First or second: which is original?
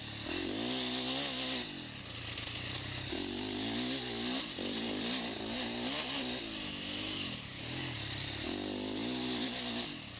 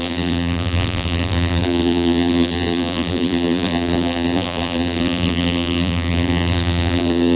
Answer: first